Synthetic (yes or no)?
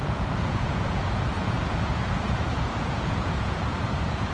yes